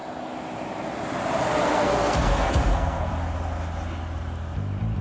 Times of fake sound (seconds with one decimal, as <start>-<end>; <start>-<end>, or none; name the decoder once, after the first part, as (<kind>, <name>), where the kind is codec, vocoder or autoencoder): 1.6-3.1 (codec, SNAC)